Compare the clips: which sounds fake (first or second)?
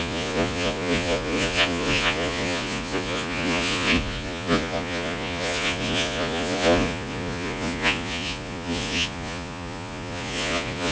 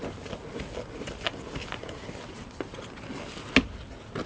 first